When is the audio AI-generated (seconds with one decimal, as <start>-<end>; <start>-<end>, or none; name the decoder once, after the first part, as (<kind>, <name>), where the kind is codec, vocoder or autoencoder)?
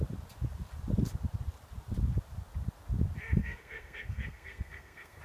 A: 3.4-5.2 (codec, SNAC)